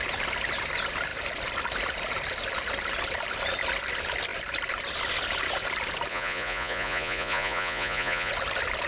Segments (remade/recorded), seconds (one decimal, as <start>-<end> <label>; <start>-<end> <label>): 0.0-6.1 recorded; 6.1-8.3 remade; 8.3-8.9 recorded